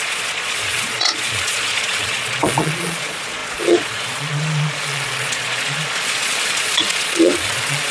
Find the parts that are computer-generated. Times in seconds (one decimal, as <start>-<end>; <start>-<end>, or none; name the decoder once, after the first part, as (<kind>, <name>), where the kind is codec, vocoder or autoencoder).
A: 0.0-7.9 (vocoder, Vocos)